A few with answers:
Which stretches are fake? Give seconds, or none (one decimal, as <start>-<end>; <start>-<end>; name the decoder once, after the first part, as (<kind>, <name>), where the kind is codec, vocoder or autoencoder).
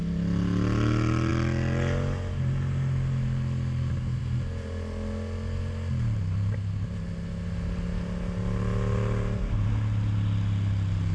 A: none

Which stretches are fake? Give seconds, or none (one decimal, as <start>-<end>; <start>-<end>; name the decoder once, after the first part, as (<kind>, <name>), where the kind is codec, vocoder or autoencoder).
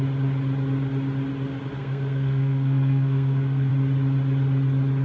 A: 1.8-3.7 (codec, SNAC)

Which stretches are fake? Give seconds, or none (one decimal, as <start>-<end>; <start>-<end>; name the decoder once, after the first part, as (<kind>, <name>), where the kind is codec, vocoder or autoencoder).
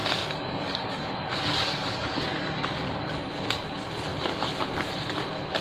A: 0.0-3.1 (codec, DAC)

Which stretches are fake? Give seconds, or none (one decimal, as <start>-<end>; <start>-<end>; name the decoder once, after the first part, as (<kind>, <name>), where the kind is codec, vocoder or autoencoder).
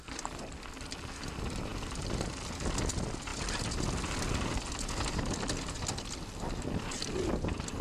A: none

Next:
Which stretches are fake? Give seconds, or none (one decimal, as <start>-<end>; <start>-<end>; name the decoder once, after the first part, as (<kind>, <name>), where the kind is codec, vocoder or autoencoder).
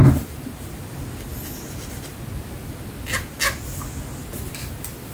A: 0.0-0.8 (vocoder, BigVGAN v2)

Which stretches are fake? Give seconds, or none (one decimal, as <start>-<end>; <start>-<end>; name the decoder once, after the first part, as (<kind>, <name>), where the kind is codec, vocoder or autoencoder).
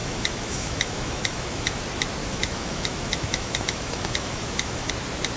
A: 0.0-1.8 (autoencoder, DAC-VAE); 2.2-4.9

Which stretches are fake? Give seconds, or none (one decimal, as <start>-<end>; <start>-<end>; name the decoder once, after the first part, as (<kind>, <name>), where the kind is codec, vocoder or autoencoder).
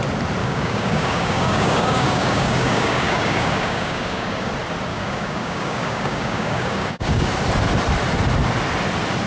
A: 0.4-4.5 (codec, DAC); 4.9-7.3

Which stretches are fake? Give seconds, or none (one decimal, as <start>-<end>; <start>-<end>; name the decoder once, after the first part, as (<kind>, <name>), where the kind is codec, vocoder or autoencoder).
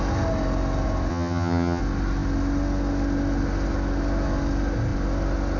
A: 1.1-1.8 (vocoder, HiFi-GAN)